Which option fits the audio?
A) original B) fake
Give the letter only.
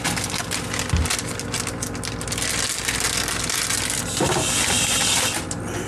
A